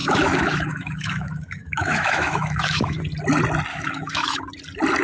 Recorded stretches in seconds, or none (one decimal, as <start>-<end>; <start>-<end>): 3.0-3.7; 4.4-5.0

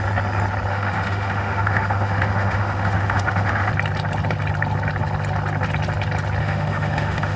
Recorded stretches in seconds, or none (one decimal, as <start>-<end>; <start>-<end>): 0.0-0.7; 3.7-6.4

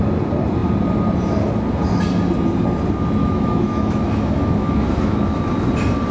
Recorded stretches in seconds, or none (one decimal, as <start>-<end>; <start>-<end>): 0.0-3.2; 5.4-6.1

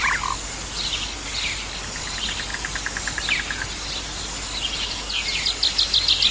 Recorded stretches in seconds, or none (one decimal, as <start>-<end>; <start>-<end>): 0.0-6.3

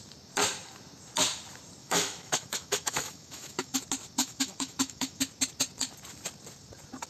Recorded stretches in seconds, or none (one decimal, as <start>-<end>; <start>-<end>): 0.0-1.8; 3.8-4.2; 5.2-7.1